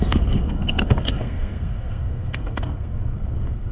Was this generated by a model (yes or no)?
yes